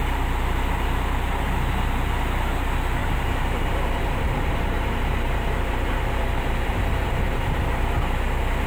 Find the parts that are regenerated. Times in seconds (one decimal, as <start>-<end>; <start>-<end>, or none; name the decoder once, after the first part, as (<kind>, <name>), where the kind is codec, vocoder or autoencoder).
3.0-7.6 (vocoder, BigVGAN v2)